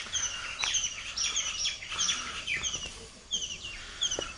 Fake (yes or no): no